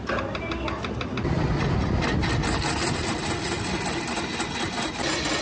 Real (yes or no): yes